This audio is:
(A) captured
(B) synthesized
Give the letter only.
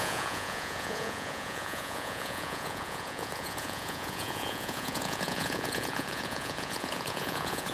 B